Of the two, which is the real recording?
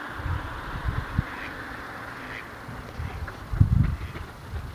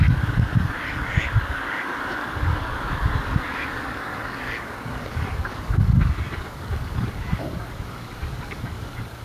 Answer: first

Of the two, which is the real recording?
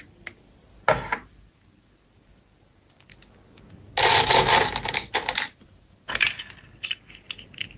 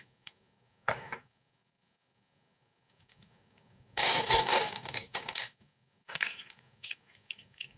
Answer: first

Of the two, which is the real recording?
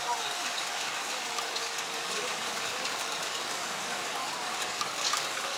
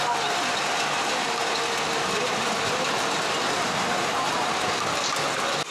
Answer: second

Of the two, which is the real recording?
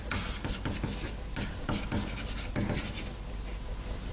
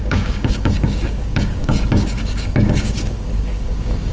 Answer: first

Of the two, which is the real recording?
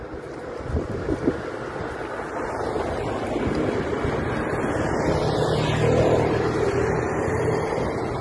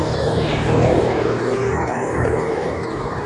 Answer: first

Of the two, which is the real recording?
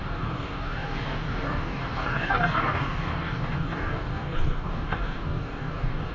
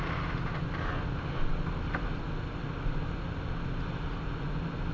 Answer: second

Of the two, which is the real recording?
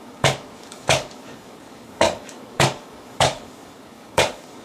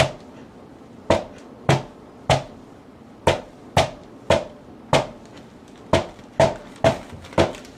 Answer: second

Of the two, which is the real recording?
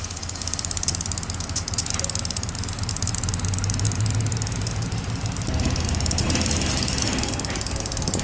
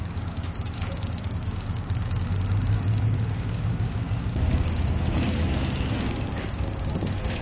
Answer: first